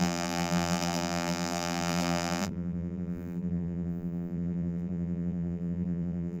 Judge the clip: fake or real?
fake